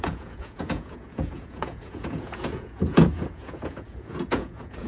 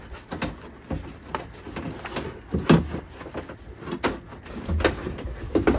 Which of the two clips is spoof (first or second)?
first